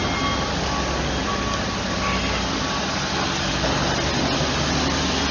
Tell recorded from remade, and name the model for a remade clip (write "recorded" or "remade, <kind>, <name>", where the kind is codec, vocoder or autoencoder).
recorded